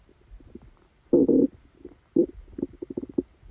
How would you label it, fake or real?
real